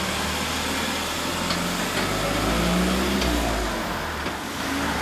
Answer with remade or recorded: recorded